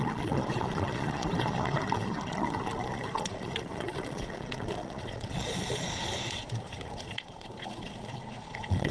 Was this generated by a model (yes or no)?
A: yes